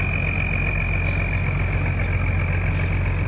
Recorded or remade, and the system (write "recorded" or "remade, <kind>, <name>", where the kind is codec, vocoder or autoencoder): recorded